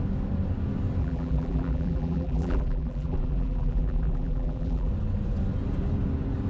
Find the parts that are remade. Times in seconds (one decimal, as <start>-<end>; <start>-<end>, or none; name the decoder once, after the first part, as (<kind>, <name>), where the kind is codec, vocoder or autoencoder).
1.0-4.9 (vocoder, BigVGAN v2)